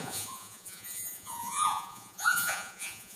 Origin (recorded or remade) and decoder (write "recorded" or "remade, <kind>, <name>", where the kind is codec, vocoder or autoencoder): remade, vocoder, Vocos